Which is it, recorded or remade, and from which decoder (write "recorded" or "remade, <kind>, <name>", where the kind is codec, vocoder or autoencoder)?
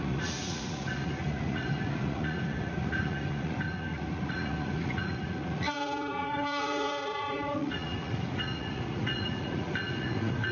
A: remade, vocoder, Vocos